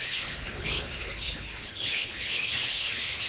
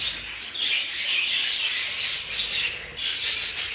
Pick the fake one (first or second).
first